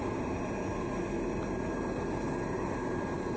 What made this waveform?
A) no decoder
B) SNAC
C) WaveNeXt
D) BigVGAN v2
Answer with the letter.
A